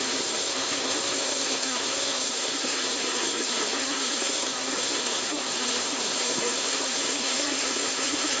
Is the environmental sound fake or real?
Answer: fake